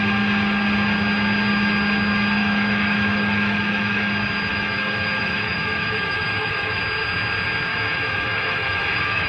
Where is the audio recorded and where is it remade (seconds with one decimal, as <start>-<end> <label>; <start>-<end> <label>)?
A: 0.0-2.4 recorded; 2.4-4.1 remade; 4.1-4.5 recorded; 4.5-6.8 remade; 6.8-7.7 recorded; 7.7-9.3 remade